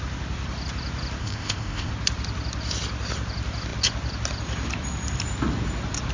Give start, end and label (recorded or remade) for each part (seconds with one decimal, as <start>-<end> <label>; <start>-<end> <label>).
0.0-1.2 recorded; 1.2-1.9 remade; 1.9-6.1 recorded